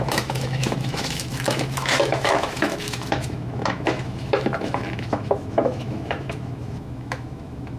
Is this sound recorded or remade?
remade